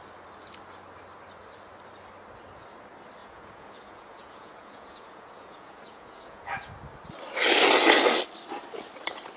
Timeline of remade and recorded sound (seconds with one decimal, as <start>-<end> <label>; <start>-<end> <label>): 0.0-3.2 recorded; 3.2-6.7 remade; 6.7-9.4 recorded